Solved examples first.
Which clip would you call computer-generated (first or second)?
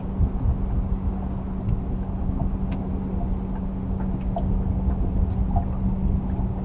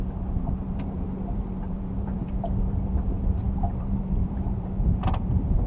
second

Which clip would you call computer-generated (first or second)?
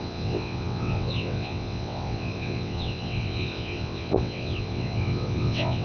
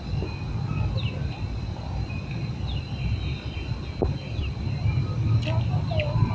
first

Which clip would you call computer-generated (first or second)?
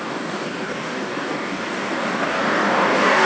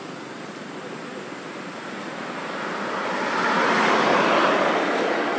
first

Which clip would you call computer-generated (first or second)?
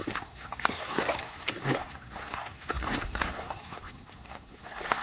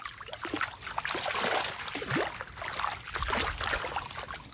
first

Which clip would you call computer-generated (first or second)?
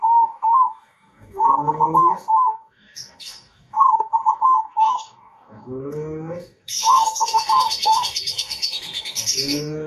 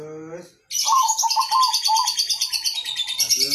first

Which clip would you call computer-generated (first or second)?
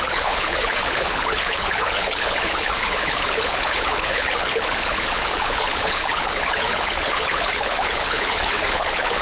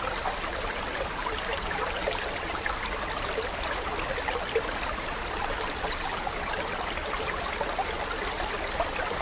first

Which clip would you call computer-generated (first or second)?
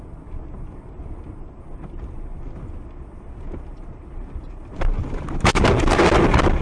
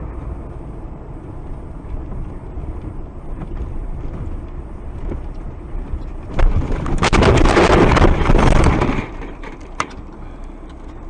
second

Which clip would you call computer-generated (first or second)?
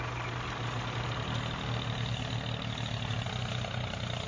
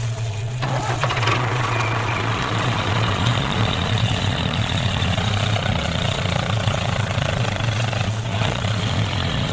second